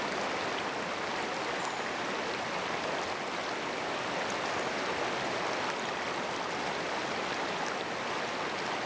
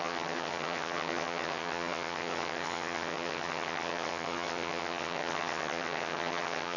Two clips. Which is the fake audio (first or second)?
second